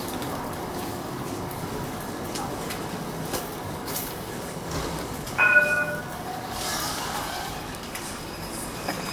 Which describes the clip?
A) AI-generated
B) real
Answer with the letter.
A